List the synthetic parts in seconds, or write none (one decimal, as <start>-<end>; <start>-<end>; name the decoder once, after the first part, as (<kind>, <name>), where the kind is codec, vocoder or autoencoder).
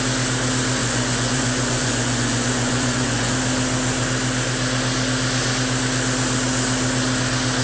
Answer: 0.8-3.3 (vocoder, Vocos)